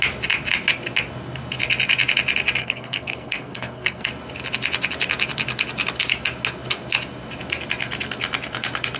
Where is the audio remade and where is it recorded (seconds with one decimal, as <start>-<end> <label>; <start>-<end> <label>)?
0.0-2.6 recorded; 2.6-4.1 remade; 4.1-9.0 recorded